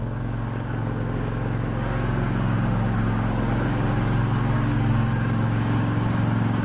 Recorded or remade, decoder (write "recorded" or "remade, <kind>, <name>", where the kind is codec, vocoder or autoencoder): remade, codec, DAC